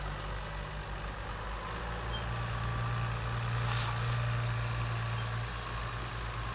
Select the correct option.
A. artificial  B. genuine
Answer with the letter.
B